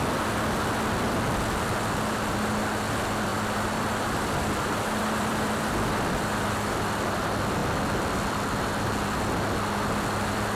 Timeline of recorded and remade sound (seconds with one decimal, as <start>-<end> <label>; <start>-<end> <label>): 0.0-3.3 recorded; 3.3-6.4 remade; 6.4-10.6 recorded